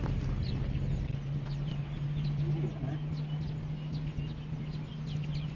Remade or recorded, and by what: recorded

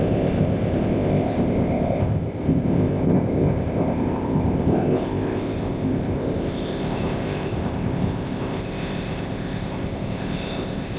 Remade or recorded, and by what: remade, codec, ZipCodec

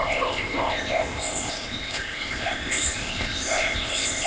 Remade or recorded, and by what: remade, codec, ZipCodec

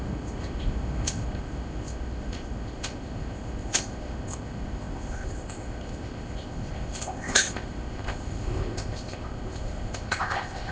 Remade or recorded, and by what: remade, codec, ZipCodec